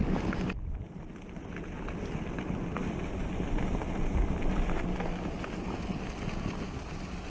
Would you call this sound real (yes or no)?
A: yes